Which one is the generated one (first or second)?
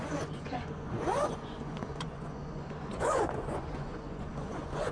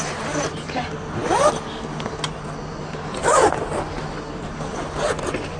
first